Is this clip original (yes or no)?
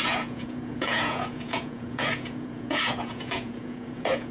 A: no